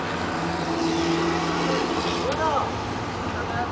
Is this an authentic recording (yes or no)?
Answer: yes